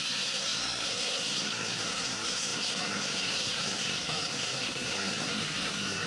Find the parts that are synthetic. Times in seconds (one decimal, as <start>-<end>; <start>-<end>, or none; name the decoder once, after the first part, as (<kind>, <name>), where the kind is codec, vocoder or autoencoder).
0.0-6.1 (codec, SNAC)